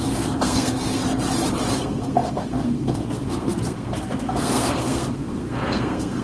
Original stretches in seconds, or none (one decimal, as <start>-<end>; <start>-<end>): 1.0-1.7